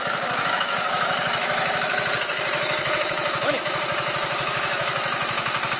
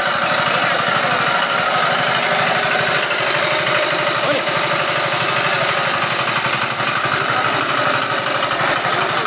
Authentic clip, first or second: second